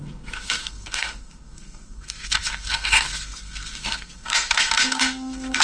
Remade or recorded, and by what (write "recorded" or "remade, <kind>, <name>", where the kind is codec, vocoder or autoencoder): remade, codec, SNAC